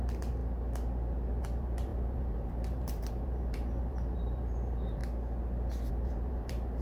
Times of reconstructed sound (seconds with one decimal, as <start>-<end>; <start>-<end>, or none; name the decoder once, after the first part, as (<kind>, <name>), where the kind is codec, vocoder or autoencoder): 0.0-0.4 (vocoder, BigVGAN v2); 1.4-5.0; 5.9-6.8